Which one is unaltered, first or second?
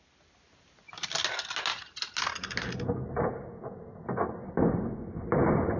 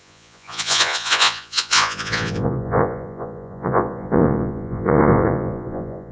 first